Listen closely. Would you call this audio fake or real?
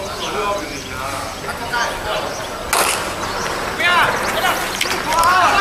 real